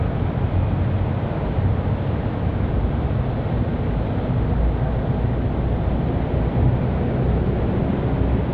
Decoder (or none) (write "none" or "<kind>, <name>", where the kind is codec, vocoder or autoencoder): none